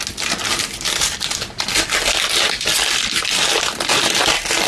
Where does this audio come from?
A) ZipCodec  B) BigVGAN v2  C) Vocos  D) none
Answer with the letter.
D